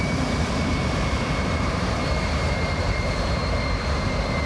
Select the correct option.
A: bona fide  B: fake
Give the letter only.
B